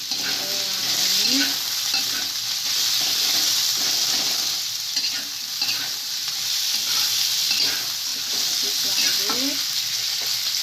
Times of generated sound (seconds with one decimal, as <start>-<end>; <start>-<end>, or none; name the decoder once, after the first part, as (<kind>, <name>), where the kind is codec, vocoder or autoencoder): none